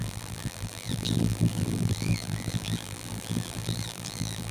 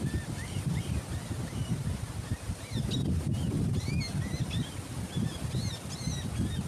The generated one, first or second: first